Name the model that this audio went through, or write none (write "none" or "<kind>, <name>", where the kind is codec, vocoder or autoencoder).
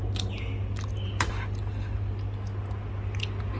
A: none